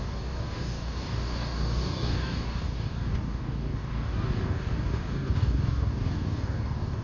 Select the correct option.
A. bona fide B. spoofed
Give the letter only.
B